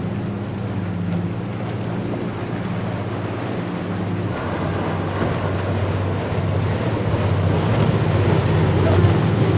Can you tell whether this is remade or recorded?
recorded